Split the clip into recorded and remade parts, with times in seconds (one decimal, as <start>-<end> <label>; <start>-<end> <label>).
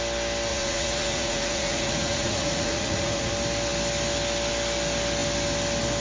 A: 0.0-0.5 recorded; 0.5-3.3 remade; 3.3-6.0 recorded